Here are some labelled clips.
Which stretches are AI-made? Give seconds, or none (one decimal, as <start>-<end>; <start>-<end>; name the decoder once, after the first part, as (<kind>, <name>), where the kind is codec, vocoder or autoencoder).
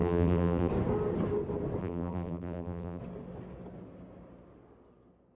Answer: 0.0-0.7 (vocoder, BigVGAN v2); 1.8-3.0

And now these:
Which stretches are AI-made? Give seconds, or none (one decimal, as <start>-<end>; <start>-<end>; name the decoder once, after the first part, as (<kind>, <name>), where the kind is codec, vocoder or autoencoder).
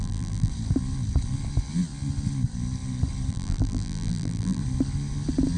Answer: 0.0-0.5 (vocoder, BigVGAN v2); 3.3-4.6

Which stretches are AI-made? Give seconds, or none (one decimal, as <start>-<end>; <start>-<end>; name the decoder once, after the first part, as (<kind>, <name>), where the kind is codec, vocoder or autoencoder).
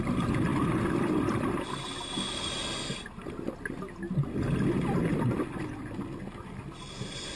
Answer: none